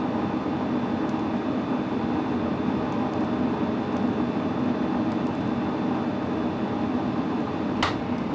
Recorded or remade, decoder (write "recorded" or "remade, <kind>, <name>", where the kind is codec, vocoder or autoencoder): recorded